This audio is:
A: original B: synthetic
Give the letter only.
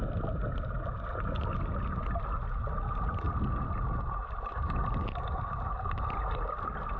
A